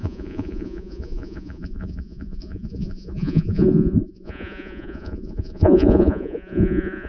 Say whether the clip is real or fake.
fake